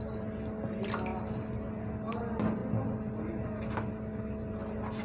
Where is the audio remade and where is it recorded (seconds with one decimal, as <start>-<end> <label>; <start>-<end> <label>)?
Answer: 0.0-5.0 recorded